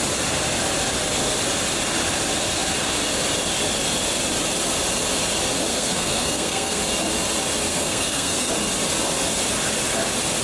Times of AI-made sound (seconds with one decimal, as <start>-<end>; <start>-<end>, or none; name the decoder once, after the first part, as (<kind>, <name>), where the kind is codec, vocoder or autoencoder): 5.7-6.8 (codec, SNAC); 7.7-8.5